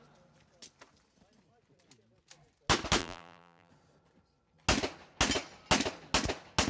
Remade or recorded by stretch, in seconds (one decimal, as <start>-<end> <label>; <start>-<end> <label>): 0.0-3.0 recorded; 3.0-3.7 remade; 3.7-6.7 recorded